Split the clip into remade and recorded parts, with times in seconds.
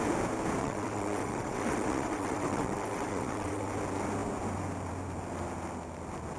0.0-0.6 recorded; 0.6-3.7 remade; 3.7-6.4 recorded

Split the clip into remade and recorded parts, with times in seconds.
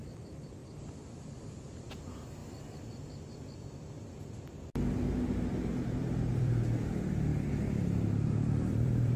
0.0-2.4 remade; 2.4-6.3 recorded; 6.3-9.2 remade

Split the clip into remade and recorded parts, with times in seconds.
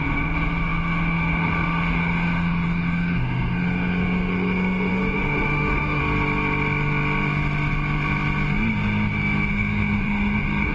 0.0-6.0 remade; 6.0-9.5 recorded; 9.5-10.7 remade